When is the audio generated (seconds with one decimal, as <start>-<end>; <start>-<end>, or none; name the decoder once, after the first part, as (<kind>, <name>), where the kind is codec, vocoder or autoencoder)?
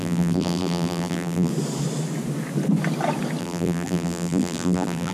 0.0-1.5 (vocoder, BigVGAN v2); 3.4-5.1